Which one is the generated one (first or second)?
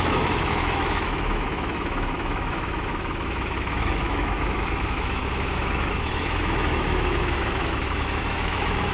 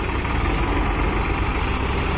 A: first